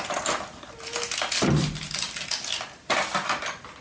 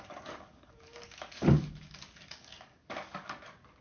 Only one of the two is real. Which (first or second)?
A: first